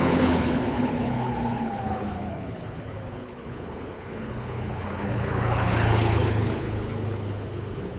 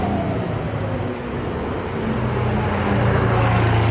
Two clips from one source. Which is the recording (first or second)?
second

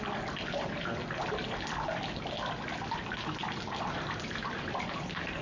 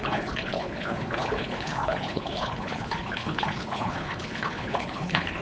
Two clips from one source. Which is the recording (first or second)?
first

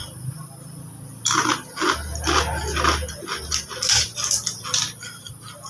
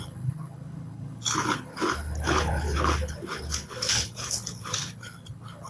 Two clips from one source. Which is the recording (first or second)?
first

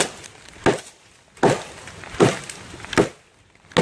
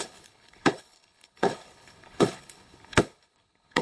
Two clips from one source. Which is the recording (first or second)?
first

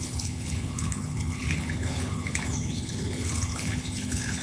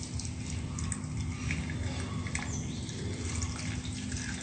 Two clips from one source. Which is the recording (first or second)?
second